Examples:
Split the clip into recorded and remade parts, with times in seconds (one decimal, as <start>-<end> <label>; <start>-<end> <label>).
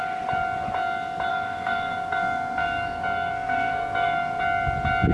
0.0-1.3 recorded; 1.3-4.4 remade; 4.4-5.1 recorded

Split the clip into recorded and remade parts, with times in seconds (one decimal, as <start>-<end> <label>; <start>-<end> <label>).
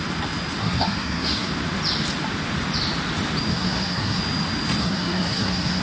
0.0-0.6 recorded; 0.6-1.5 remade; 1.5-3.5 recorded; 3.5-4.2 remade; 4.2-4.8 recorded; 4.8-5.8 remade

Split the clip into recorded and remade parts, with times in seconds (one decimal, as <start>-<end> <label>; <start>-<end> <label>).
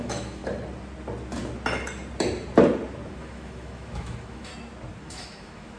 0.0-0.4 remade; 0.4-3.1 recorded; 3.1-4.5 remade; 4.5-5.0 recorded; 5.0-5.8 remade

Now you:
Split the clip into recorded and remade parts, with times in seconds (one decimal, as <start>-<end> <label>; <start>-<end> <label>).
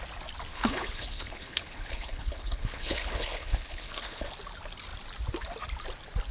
0.0-0.5 recorded; 0.5-4.3 remade; 4.3-6.3 recorded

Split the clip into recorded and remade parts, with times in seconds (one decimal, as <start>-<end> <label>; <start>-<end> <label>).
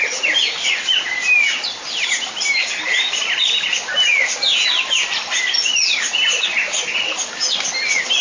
0.0-8.2 recorded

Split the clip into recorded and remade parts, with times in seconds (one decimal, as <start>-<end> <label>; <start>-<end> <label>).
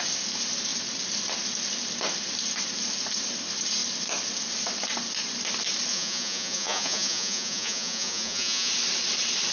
0.0-5.9 recorded; 5.9-8.7 remade; 8.7-9.5 recorded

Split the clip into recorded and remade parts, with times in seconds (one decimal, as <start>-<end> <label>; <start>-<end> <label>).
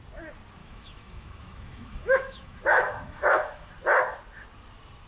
0.0-0.6 recorded; 0.6-3.7 remade; 3.7-5.1 recorded